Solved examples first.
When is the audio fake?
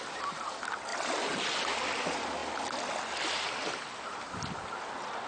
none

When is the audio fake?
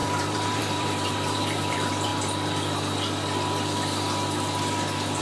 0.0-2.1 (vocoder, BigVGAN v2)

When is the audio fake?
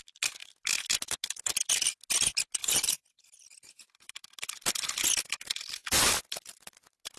2.6-6.6 (vocoder, BigVGAN v2)